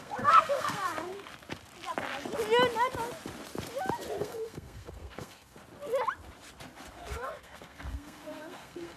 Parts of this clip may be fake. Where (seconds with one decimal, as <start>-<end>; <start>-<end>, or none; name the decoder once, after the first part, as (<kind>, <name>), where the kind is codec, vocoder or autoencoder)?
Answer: 0.0-1.3 (codec, SNAC); 4.2-5.6; 6.9-9.0